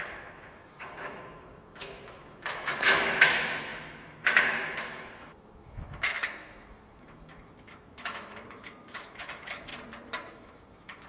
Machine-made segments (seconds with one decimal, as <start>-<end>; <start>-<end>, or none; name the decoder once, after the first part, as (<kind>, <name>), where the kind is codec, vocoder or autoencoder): 0.0-9.7 (autoencoder, DAC-VAE); 10.3-11.1